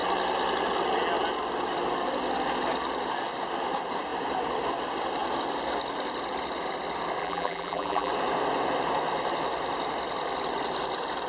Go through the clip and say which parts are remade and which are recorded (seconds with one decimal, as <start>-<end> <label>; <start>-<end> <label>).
0.0-7.2 recorded; 7.2-8.1 remade; 8.1-11.3 recorded